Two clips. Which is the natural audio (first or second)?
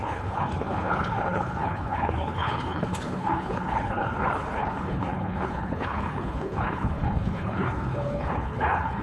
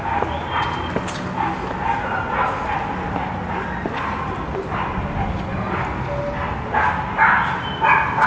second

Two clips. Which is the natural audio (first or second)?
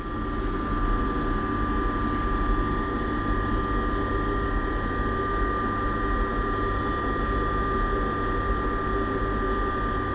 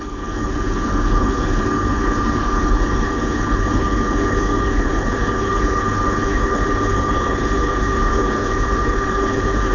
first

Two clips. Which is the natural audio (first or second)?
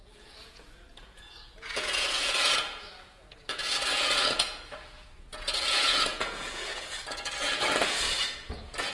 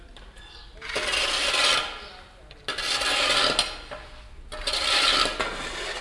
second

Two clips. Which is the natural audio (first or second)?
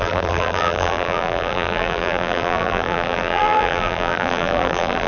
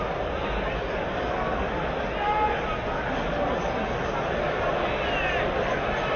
second